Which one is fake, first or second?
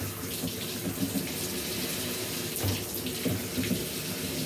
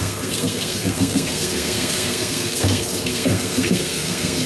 second